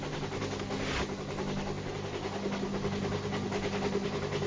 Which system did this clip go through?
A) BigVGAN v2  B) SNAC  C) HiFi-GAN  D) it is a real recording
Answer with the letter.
D